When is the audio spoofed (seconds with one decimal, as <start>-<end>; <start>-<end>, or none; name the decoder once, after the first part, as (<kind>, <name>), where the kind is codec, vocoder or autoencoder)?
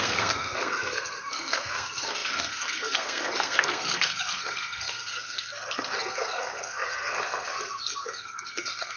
0.0-9.0 (codec, SNAC)